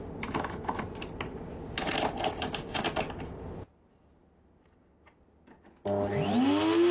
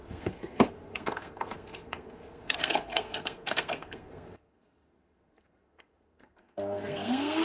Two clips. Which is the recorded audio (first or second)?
first